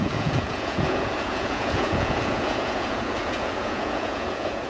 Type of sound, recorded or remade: remade